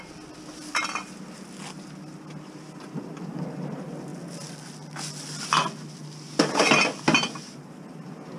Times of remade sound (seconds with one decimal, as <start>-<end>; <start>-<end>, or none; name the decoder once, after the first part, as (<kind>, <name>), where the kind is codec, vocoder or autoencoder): none